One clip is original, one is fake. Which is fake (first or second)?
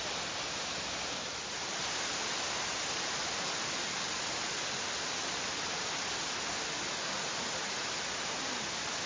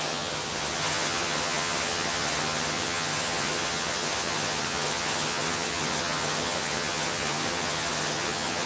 second